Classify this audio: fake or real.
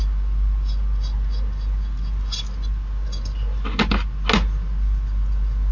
real